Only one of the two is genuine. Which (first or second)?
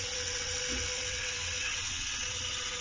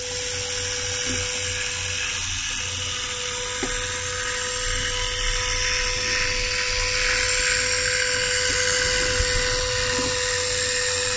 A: second